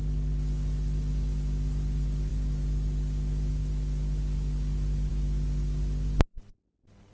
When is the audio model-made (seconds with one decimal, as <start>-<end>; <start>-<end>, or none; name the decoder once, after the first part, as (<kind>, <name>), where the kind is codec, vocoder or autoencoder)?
none